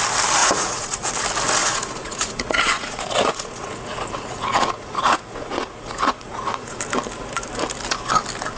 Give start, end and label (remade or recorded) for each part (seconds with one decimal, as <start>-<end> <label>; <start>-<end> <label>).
0.0-0.4 recorded; 0.4-1.1 remade; 1.1-1.6 recorded; 1.6-6.8 remade; 6.8-8.6 recorded